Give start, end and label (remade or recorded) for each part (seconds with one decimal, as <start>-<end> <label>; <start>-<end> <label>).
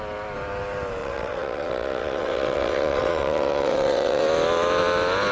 0.0-1.0 recorded; 1.0-4.2 remade; 4.2-5.3 recorded